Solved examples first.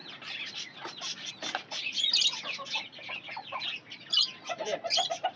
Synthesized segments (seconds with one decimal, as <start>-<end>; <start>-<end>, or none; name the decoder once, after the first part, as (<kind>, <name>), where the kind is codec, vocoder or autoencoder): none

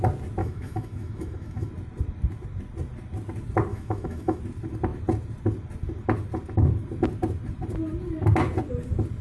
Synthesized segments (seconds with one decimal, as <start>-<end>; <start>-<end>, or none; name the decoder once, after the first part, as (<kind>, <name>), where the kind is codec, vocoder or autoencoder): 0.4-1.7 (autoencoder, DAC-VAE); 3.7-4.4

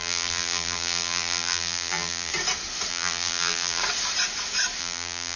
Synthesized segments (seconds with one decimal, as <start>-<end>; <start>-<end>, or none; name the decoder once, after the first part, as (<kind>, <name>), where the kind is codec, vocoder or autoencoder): 0.0-2.3 (vocoder, BigVGAN v2); 2.9-3.8; 4.8-5.4

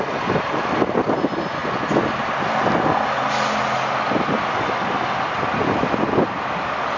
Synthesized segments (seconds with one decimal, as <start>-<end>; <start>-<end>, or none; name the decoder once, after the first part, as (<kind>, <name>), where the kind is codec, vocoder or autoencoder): none

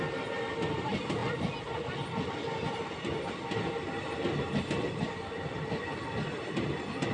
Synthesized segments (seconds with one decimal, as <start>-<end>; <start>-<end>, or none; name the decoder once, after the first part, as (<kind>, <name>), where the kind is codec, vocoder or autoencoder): none

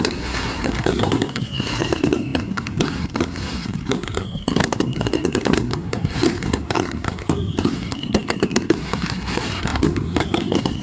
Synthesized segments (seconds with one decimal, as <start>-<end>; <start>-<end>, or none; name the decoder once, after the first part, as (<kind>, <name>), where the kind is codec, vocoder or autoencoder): 0.0-10.8 (codec, SNAC)

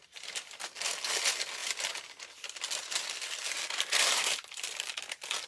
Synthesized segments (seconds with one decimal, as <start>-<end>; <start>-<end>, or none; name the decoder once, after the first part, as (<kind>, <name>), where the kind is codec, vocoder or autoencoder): 1.6-4.9 (vocoder, BigVGAN v2)

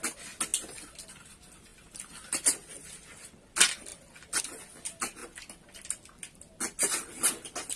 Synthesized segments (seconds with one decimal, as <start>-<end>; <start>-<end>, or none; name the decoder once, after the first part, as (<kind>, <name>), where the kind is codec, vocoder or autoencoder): none